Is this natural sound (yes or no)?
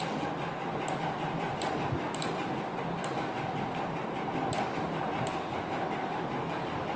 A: yes